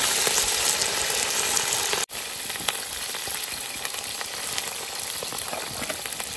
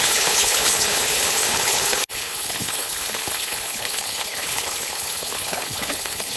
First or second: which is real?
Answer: first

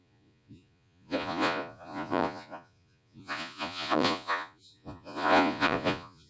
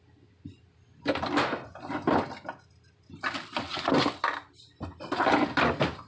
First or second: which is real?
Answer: second